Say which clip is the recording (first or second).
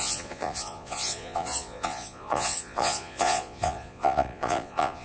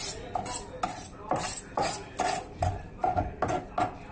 second